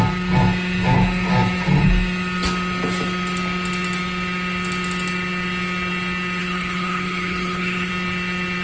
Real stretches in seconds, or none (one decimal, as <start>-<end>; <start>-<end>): 0.0-6.4; 7.9-8.6